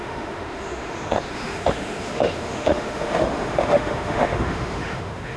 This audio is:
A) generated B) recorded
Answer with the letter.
A